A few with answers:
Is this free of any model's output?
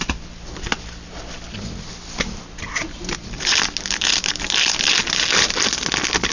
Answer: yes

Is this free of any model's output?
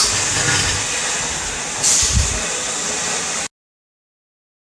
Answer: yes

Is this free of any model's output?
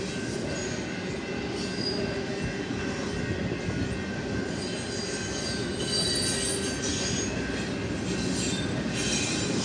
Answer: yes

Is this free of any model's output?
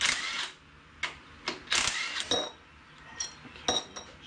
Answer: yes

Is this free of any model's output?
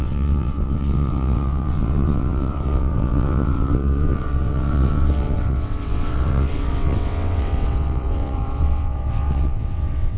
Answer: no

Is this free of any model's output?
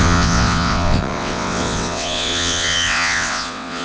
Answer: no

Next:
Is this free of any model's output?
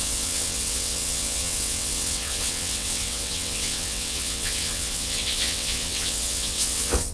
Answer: no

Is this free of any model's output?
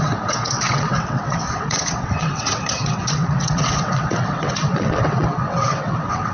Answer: no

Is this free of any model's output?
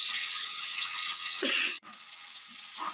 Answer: no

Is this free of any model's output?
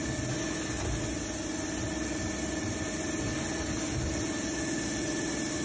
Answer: yes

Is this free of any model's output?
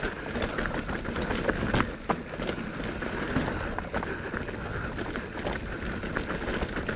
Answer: yes